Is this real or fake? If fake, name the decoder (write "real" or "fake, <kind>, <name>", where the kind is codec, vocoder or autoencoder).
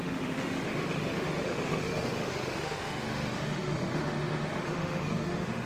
fake, autoencoder, DAC-VAE